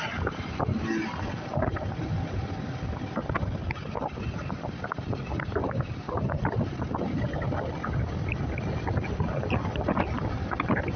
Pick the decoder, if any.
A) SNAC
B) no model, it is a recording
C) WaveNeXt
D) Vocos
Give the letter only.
B